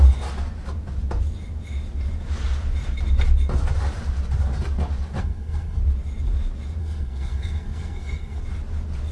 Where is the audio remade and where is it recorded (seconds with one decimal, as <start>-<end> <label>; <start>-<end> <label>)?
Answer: 0.0-5.2 recorded; 5.2-5.8 remade; 5.8-6.8 recorded; 6.8-8.4 remade; 8.4-9.1 recorded